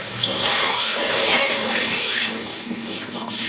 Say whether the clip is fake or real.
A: fake